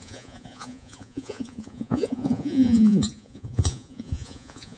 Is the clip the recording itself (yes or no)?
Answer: no